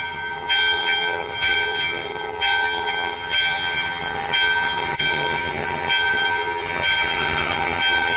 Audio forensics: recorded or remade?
remade